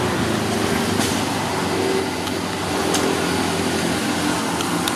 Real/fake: real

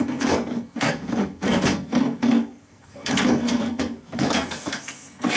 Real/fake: fake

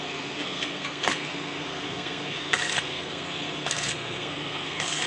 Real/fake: fake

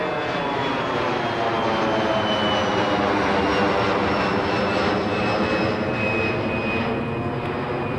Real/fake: real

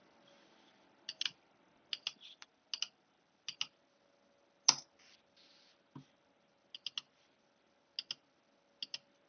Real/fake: real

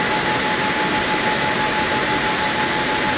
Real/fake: real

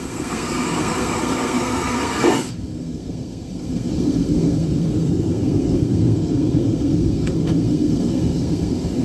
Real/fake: fake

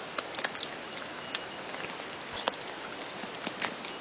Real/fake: real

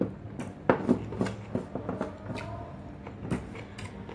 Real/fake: real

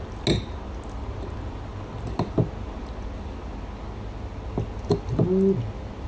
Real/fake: real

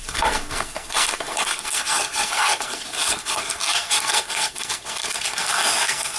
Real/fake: fake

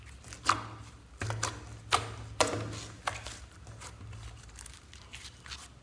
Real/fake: real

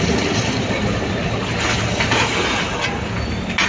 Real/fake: real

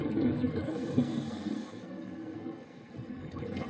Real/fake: fake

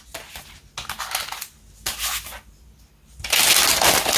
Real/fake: real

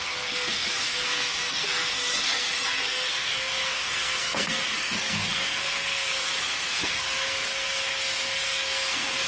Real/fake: fake